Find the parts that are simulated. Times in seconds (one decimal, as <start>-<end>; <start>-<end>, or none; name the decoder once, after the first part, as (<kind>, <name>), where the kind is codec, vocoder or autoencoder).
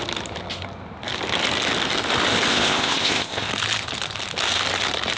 2.5-3.5 (codec, ZipCodec)